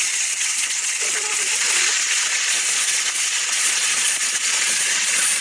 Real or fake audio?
fake